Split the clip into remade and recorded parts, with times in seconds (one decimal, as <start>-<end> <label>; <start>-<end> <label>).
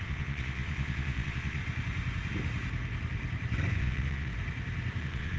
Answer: 0.0-1.6 remade; 1.6-3.8 recorded; 3.8-4.3 remade; 4.3-5.0 recorded; 5.0-5.4 remade